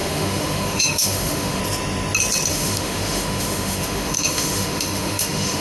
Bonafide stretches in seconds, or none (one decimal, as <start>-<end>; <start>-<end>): 1.6-2.5